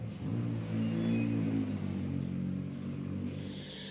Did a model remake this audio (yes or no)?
no